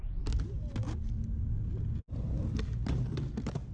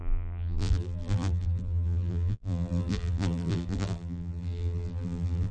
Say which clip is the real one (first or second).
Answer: first